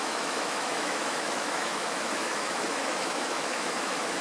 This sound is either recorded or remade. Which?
remade